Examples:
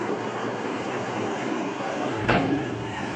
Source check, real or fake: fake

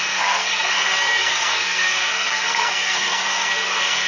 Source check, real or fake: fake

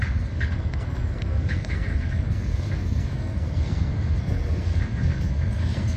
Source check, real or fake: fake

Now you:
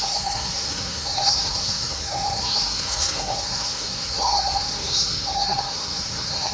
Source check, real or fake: fake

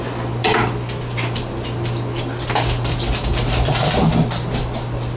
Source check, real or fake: real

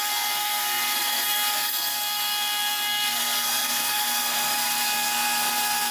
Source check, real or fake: fake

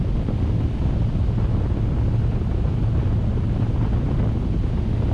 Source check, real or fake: real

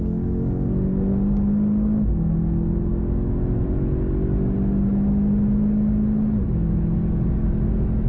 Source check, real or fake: real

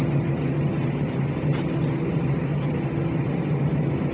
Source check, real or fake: real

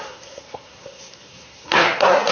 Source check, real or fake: fake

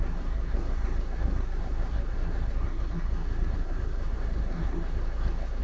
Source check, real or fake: fake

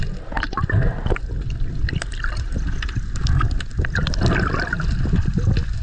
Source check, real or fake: real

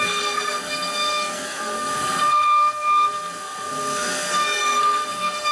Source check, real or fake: fake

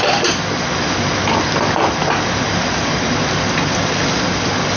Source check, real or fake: real